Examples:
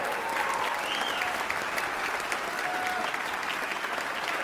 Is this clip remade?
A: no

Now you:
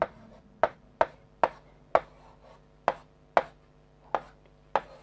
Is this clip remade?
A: no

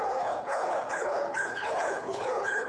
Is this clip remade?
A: yes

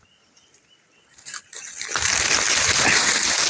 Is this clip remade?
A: no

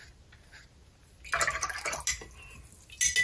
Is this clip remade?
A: no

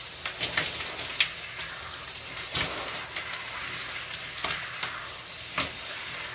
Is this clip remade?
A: no